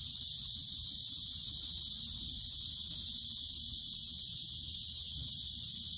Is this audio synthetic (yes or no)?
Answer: no